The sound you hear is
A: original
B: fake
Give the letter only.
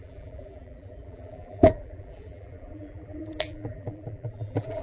B